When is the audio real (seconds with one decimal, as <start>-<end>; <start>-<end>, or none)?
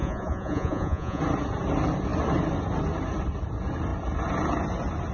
1.2-5.1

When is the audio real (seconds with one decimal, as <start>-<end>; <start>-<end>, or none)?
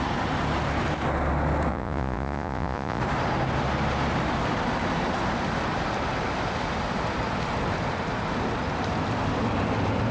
0.0-1.7; 3.0-10.1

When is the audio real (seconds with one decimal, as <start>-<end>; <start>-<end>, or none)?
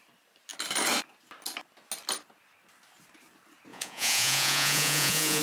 0.0-3.7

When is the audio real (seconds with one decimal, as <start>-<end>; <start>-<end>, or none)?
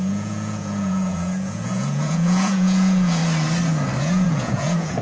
3.2-4.0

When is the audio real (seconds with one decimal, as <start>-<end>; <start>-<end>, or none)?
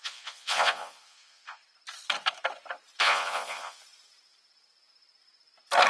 1.6-3.0; 3.8-5.9